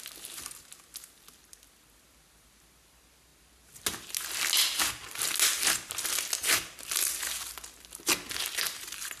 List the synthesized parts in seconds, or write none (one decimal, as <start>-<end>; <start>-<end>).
none